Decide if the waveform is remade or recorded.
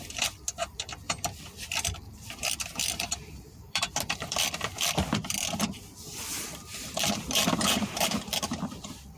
remade